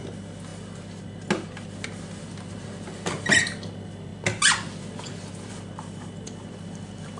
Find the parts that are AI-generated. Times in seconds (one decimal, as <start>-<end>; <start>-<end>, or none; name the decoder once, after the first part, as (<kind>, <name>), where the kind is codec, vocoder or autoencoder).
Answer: none